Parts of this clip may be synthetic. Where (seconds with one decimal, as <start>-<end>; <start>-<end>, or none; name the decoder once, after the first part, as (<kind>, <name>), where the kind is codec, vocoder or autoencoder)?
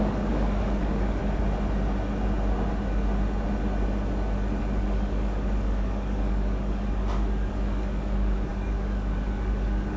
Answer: 0.0-1.2 (codec, DAC); 4.6-10.0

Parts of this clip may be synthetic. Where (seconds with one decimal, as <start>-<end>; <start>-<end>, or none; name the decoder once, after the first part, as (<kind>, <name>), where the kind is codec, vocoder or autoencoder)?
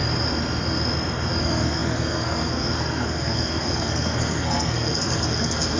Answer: 1.4-5.8 (codec, SNAC)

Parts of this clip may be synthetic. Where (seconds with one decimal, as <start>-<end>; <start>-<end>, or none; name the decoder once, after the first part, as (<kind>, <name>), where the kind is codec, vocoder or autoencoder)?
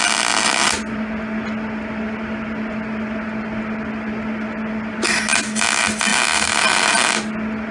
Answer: none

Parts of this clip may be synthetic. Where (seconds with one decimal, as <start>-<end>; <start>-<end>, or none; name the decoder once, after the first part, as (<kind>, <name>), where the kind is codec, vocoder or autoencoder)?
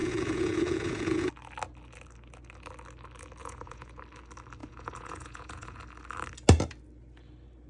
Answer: 0.0-1.3 (vocoder, Vocos); 3.4-4.0; 4.6-5.8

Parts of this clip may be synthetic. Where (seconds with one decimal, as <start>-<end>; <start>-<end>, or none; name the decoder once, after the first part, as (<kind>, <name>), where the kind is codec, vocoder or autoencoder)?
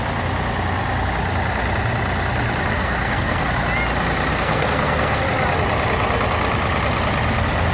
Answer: 2.7-3.5 (codec, SNAC); 4.3-5.2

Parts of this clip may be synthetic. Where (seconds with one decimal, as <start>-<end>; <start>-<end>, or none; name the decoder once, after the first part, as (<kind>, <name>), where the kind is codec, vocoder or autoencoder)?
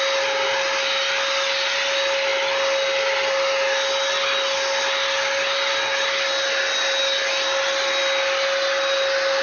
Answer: none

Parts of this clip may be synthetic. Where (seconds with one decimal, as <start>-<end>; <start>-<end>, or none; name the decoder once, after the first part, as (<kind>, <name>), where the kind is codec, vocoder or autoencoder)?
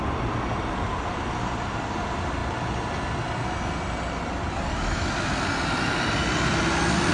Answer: none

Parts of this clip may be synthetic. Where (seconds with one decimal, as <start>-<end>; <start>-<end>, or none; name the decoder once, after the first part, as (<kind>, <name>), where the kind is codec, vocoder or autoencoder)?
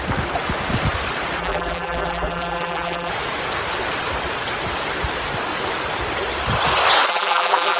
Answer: 1.4-3.1 (vocoder, BigVGAN v2); 7.1-7.8